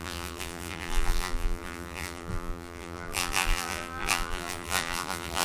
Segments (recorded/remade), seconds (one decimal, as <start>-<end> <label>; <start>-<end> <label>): 0.0-5.4 remade